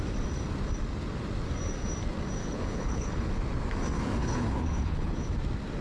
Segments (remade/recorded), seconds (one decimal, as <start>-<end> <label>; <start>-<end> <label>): 0.0-2.4 recorded; 2.4-3.3 remade; 3.3-4.2 recorded; 4.2-5.3 remade; 5.3-5.8 recorded